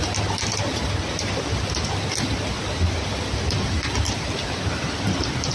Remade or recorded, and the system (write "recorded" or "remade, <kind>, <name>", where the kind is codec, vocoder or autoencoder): recorded